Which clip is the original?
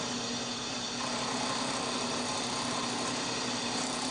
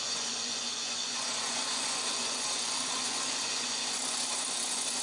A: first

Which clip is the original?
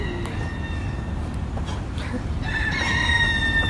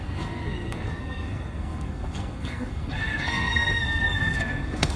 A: first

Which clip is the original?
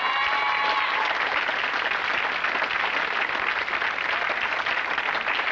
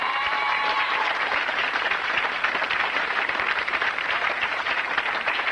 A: first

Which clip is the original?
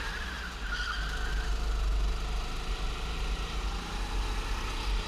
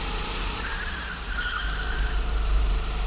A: first